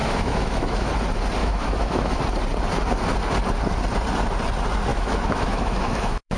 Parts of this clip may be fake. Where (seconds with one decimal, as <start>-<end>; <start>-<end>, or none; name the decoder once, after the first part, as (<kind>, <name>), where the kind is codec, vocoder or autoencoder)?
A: 0.0-0.9 (autoencoder, DAC-VAE); 1.4-2.2; 4.9-6.4